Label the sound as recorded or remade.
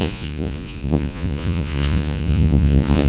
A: remade